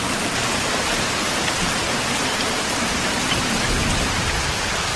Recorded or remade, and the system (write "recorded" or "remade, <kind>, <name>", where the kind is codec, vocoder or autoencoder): remade, vocoder, BigVGAN v2